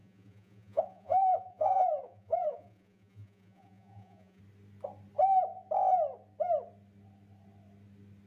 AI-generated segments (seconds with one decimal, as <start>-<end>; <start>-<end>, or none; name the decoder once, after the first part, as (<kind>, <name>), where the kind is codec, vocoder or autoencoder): 0.0-4.4 (vocoder, Vocos)